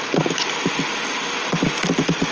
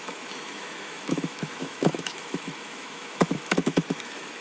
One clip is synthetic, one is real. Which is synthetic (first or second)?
second